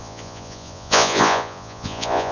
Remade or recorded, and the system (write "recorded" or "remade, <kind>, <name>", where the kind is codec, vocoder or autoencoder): remade, vocoder, Vocos